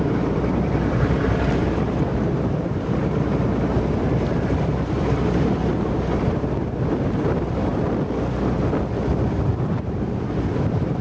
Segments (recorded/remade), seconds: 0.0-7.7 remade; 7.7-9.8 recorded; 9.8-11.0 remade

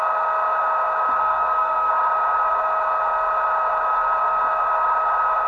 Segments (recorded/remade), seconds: 0.0-1.2 recorded; 1.2-1.9 remade; 1.9-5.5 recorded

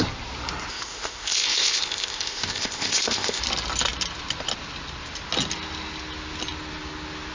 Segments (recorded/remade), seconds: 0.0-0.7 recorded; 0.7-3.4 remade; 3.4-7.3 recorded

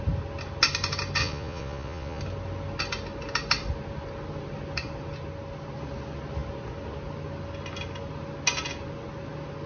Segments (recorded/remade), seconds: 0.0-1.2 recorded; 1.2-2.2 remade; 2.2-9.7 recorded

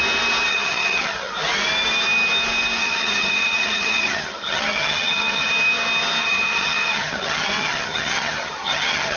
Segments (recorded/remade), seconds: 0.0-0.5 recorded; 0.5-1.3 remade; 1.3-2.8 recorded; 2.8-5.5 remade; 5.5-6.2 recorded; 6.2-9.2 remade

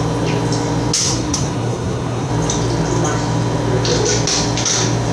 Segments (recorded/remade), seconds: 0.0-1.0 recorded; 1.0-2.3 remade; 2.3-5.1 recorded

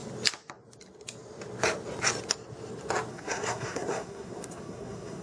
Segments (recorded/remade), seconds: 0.0-3.1 recorded; 3.1-5.2 remade